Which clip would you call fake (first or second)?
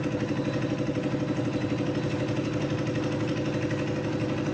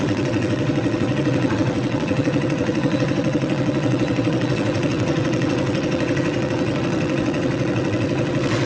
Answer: second